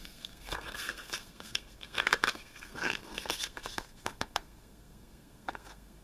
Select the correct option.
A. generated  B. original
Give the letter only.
A